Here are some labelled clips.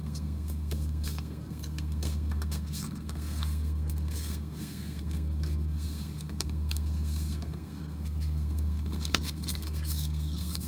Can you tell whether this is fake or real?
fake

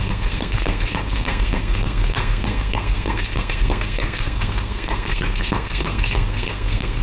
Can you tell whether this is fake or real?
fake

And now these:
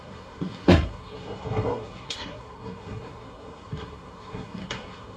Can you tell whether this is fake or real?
fake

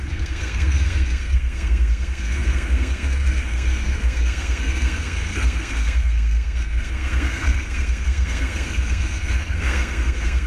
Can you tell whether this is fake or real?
fake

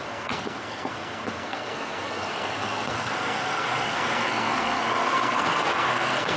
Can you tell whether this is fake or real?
fake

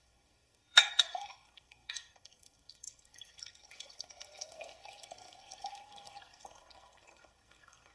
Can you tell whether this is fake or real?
fake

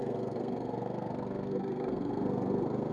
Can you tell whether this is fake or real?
fake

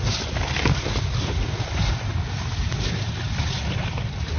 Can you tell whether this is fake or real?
real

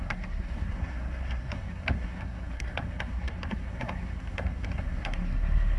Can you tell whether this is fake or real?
fake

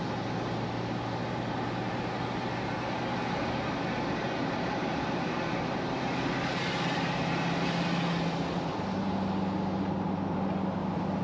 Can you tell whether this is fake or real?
real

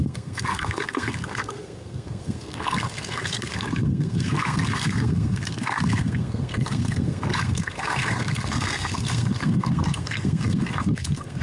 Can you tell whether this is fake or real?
fake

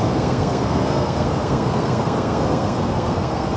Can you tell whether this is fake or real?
fake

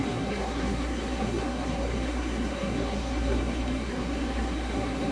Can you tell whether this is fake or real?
fake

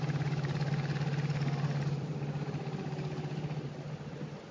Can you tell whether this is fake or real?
real